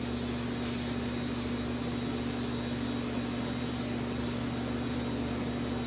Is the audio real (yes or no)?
yes